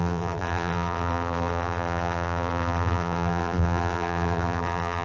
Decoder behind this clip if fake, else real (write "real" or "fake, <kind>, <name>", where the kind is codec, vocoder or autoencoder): fake, vocoder, BigVGAN v2